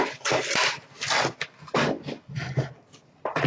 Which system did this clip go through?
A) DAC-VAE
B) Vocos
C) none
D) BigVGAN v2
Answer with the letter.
C